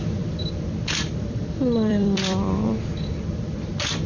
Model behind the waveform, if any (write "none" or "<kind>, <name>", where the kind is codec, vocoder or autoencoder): vocoder, BigVGAN v2